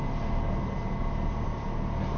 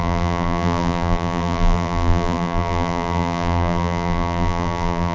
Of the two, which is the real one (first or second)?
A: first